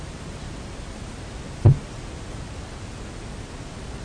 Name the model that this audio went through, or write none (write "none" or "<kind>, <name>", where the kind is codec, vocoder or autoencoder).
none